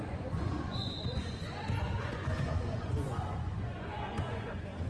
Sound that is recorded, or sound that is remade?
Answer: remade